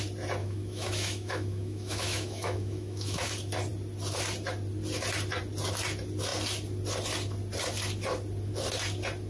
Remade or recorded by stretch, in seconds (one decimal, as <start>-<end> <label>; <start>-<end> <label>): 0.0-0.4 recorded; 0.4-3.3 remade; 3.3-9.3 recorded